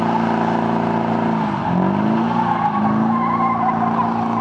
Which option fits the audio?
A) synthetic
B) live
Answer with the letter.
B